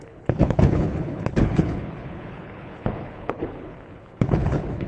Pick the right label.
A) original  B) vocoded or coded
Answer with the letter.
B